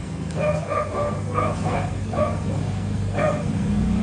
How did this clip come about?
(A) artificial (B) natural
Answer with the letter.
A